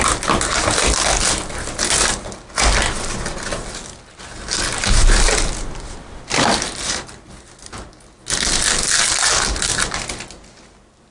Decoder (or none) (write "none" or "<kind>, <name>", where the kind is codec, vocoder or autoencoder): none